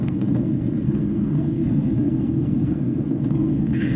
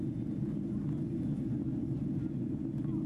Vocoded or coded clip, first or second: first